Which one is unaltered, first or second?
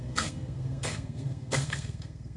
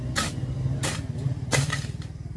second